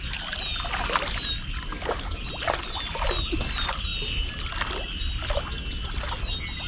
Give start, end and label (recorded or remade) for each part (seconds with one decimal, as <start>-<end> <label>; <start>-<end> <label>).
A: 0.0-6.7 recorded